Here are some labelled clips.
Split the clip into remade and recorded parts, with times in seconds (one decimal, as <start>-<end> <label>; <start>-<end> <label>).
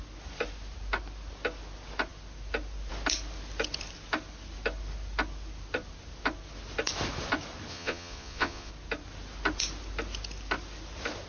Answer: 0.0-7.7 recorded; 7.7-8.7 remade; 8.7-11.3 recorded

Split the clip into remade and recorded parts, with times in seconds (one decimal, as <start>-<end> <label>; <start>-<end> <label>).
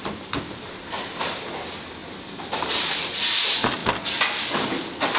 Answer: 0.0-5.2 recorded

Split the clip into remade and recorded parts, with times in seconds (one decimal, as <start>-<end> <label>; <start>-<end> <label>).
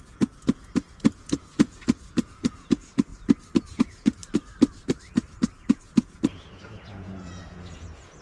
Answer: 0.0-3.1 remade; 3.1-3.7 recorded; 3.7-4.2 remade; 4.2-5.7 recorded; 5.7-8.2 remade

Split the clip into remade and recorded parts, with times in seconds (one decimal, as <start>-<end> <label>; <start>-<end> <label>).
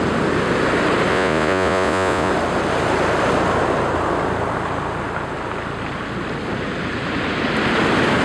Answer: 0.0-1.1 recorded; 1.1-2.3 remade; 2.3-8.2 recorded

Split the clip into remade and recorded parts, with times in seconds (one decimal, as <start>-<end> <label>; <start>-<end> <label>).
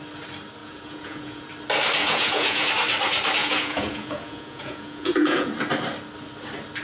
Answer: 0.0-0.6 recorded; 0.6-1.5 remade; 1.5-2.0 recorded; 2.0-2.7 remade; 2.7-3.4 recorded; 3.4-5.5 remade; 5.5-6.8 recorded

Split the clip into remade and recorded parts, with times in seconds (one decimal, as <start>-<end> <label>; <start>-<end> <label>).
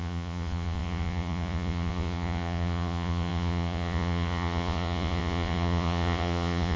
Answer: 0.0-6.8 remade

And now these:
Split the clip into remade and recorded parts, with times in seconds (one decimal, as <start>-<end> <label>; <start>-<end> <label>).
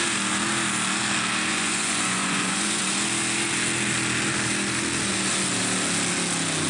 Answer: 0.0-1.5 recorded; 1.5-2.8 remade; 2.8-6.7 recorded